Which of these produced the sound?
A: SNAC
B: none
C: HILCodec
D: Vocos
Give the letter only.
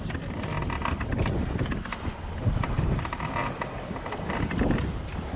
B